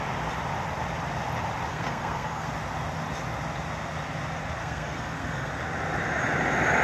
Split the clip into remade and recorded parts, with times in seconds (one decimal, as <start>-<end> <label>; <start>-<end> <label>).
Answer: 0.0-1.7 recorded; 1.7-2.5 remade; 2.5-4.6 recorded; 4.6-5.5 remade; 5.5-6.8 recorded